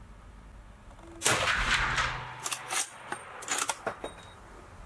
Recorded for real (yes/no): yes